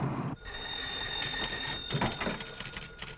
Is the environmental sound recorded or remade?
recorded